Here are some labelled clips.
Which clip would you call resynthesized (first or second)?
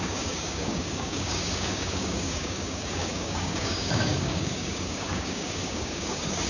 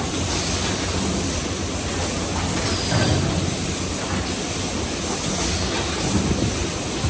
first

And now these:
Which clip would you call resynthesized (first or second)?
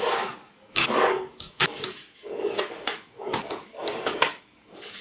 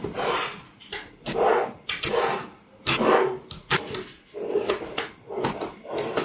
first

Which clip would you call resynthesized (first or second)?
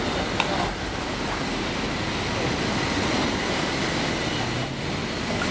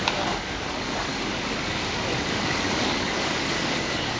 second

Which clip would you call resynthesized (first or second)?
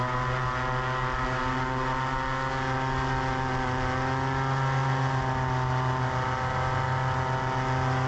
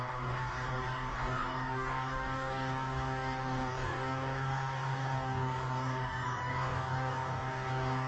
second